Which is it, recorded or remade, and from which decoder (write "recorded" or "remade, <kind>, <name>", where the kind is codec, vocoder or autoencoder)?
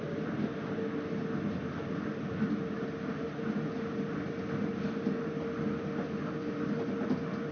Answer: recorded